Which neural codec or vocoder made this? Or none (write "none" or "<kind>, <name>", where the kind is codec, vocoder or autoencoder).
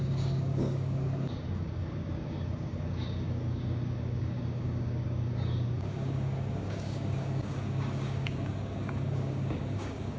codec, DAC